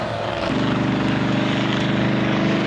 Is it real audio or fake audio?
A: fake